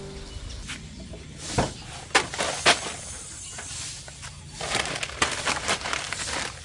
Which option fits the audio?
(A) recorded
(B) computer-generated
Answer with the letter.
A